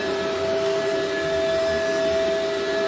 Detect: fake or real real